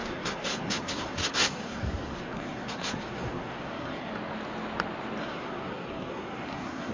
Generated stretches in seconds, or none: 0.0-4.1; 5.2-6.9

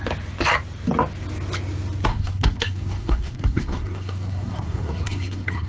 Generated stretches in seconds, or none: 2.1-5.7

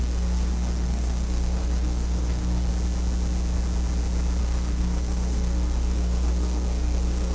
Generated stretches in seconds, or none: 0.0-2.7; 4.4-7.3

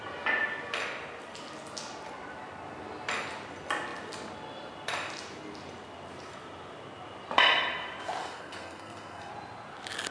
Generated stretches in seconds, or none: 8.2-9.3

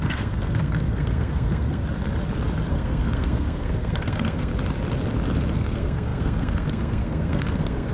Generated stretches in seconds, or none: 0.0-1.8; 2.7-4.5; 5.5-7.9

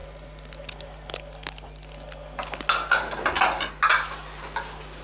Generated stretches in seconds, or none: none